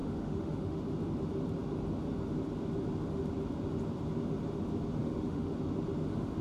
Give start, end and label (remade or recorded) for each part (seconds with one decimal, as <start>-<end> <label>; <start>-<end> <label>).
0.0-0.8 remade; 0.8-5.0 recorded; 5.0-5.5 remade; 5.5-6.4 recorded